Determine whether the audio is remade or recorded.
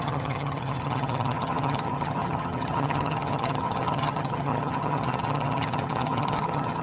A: remade